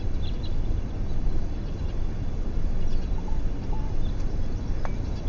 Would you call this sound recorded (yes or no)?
yes